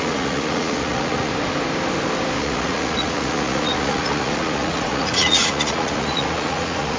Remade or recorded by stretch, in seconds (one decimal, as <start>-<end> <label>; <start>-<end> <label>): 0.0-1.3 remade; 1.3-2.4 recorded; 2.4-7.0 remade